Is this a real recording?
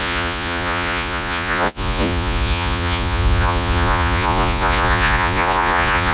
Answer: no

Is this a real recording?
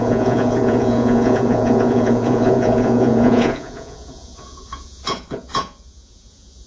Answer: no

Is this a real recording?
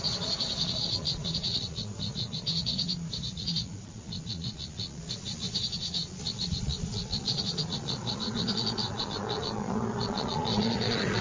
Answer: no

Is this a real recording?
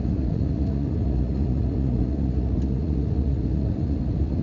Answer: no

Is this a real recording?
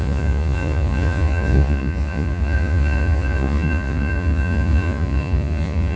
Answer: no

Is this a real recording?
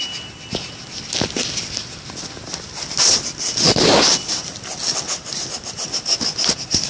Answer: yes